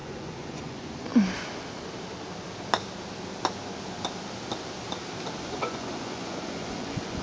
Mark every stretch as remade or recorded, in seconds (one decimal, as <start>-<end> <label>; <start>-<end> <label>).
0.0-1.1 remade; 1.1-5.4 recorded; 5.4-7.2 remade